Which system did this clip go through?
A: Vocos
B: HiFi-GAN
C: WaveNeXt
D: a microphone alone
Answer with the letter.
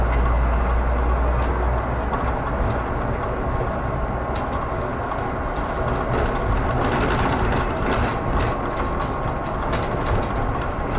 D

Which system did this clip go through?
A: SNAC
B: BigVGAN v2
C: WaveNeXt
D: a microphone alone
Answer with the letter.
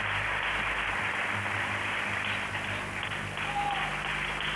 D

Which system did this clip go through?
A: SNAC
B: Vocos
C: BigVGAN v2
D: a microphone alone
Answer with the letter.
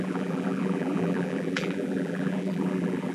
C